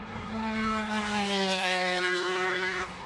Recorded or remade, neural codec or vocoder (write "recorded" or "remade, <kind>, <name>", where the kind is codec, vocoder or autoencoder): remade, codec, SNAC